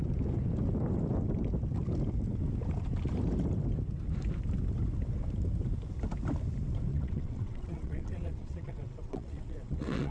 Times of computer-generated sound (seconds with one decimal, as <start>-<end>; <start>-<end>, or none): 6.9-10.1

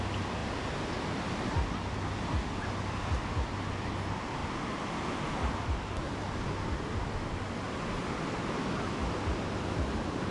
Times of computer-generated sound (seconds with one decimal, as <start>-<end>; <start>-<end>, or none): none

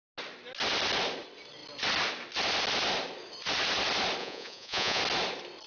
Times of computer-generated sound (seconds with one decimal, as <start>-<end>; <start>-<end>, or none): 4.2-5.0

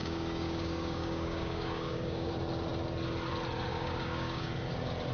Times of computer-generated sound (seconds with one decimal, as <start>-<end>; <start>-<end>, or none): 0.0-2.3; 3.7-4.5